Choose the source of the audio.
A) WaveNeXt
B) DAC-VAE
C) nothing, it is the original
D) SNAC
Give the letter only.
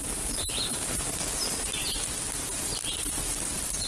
C